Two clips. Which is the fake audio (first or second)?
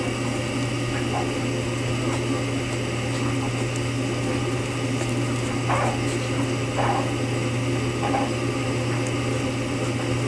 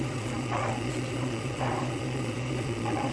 second